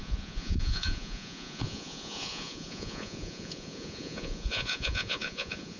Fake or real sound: fake